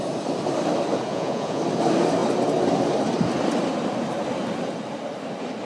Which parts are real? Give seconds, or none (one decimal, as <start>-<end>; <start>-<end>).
0.0-1.1; 1.6-5.6